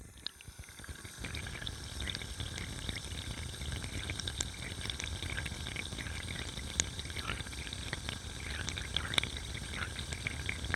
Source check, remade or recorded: recorded